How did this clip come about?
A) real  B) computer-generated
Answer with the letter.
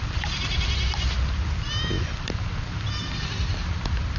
A